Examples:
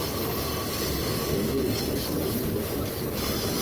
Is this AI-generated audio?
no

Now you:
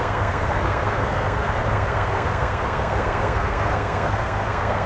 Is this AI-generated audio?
yes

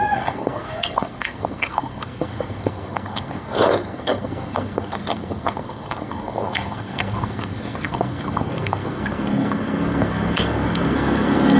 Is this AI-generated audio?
yes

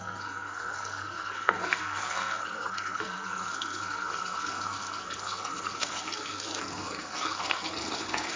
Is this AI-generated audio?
yes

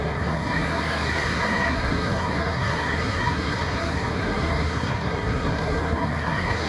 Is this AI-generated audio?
yes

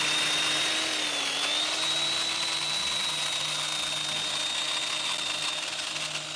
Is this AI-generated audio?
no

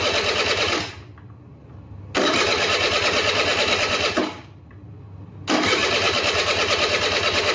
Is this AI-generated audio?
no